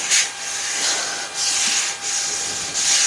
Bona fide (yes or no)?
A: yes